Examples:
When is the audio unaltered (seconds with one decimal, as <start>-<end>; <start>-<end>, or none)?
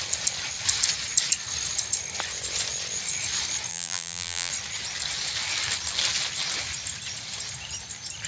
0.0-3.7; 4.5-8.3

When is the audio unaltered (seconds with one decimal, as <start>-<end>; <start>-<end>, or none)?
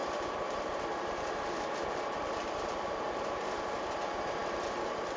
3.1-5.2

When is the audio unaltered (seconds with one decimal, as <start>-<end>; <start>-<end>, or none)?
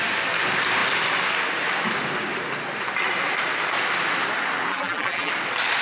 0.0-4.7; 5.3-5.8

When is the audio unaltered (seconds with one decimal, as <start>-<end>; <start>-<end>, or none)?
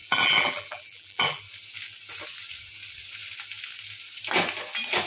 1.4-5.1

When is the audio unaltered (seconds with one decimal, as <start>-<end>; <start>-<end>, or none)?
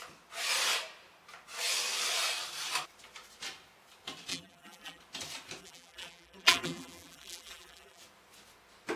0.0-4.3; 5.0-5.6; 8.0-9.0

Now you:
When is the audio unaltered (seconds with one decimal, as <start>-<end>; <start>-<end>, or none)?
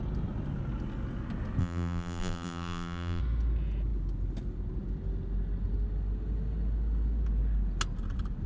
0.0-1.6; 3.2-8.5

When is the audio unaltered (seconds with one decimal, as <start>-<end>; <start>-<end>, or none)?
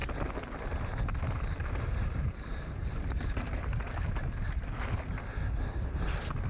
0.0-1.6; 2.8-6.5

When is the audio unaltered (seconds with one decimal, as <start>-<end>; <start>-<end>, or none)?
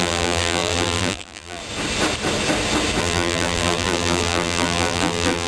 1.6-3.0